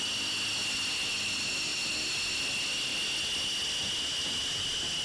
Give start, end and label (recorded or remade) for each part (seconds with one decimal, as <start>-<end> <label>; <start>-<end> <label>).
0.0-5.0 recorded